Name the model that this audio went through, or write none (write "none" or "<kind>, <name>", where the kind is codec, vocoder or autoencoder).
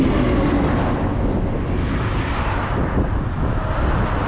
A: none